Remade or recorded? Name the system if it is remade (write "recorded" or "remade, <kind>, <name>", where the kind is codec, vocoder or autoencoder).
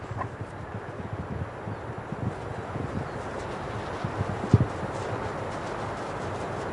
recorded